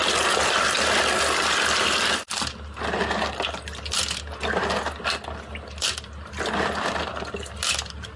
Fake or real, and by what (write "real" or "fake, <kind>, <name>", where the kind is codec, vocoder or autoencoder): real